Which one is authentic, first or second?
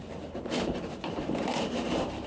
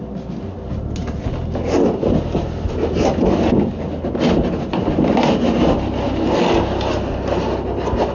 second